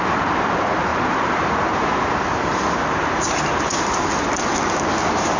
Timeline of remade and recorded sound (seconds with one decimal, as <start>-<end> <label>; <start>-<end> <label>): 0.0-0.9 recorded; 0.9-4.1 remade; 4.1-5.4 recorded